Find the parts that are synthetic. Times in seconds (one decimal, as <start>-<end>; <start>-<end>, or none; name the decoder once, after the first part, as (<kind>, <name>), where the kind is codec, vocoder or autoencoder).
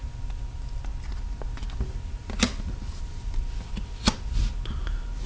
none